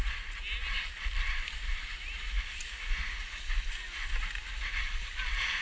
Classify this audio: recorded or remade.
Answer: recorded